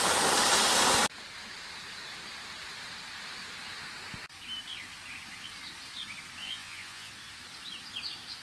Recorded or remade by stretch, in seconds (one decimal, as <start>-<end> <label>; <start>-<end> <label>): 0.0-6.4 recorded; 6.4-7.1 remade; 7.1-8.4 recorded